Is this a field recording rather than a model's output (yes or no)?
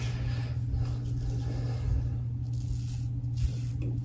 yes